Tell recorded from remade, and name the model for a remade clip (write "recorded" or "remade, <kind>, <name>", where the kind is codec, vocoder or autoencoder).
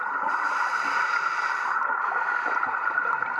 recorded